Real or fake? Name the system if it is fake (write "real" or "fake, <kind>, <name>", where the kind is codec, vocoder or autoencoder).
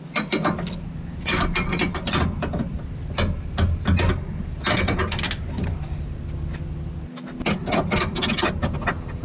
real